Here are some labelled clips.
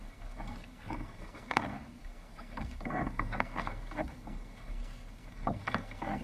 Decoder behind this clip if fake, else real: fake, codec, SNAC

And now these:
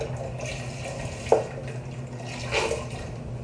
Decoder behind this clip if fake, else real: real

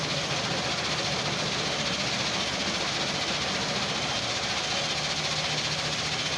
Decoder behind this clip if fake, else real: real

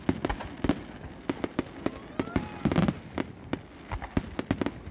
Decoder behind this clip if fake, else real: real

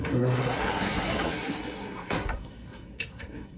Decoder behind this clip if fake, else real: fake, codec, SNAC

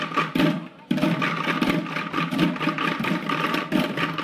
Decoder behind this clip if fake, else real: real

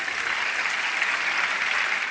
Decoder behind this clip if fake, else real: real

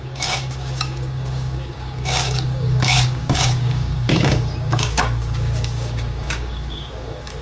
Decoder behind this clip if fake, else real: fake, codec, DAC